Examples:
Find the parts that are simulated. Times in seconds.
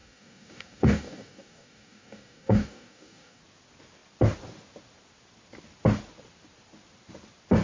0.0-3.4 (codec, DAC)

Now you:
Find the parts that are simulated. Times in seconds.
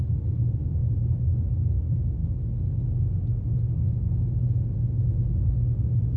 none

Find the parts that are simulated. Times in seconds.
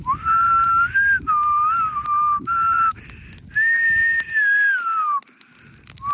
none